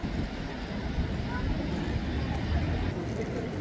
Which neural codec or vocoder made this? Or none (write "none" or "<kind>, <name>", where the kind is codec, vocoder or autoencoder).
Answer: none